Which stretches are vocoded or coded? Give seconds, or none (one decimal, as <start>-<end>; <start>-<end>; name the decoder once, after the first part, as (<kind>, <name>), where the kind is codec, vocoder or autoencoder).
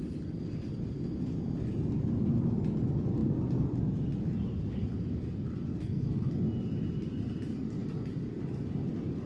5.7-6.3 (codec, SNAC)